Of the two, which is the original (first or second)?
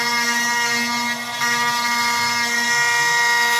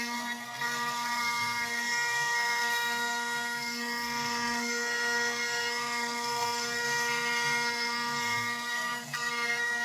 first